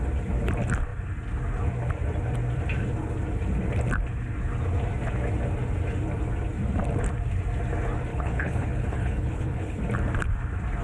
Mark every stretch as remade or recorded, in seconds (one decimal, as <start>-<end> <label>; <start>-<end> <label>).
0.0-8.1 recorded; 8.1-9.8 remade; 9.8-10.8 recorded